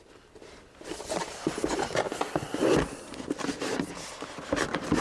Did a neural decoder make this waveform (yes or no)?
no